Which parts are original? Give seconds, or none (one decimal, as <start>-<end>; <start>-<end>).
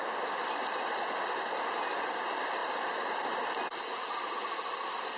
0.0-5.2